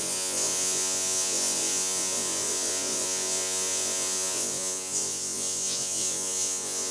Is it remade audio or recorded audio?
remade